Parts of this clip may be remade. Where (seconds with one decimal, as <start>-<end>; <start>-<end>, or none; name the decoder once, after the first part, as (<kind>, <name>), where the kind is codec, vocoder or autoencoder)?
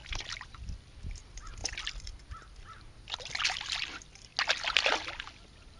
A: 0.0-0.6 (vocoder, BigVGAN v2)